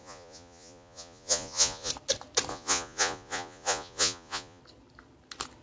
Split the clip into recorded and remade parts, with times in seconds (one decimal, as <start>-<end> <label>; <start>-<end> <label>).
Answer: 0.0-1.9 remade; 1.9-2.5 recorded; 2.5-4.6 remade; 4.6-5.6 recorded